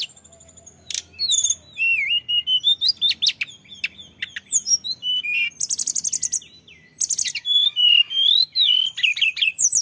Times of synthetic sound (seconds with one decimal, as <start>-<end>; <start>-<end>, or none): 4.7-5.6; 7.6-9.8